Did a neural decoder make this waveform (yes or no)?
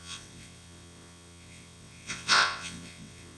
yes